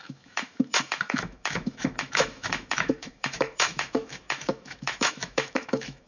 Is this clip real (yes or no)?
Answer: no